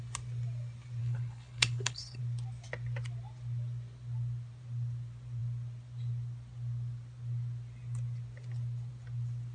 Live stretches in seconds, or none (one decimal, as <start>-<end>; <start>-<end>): 0.0-1.0; 2.2-9.5